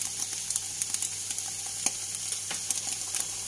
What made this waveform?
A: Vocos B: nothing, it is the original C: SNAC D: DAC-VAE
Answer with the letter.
B